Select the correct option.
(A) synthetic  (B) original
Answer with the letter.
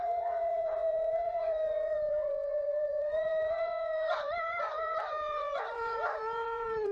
A